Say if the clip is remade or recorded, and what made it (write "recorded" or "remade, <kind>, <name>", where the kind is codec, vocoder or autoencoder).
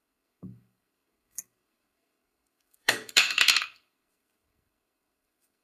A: remade, codec, SNAC